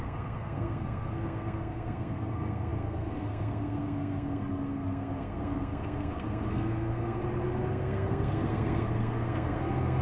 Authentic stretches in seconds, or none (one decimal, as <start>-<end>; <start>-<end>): 7.2-7.7